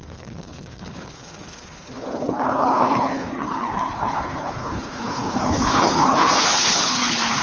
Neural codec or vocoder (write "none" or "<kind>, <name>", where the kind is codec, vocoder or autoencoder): codec, HILCodec